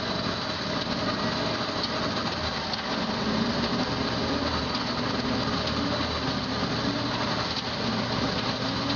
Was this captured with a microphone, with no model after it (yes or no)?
yes